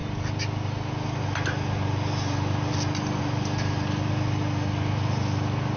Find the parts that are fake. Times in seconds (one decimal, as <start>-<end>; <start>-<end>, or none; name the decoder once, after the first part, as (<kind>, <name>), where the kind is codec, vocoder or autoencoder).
none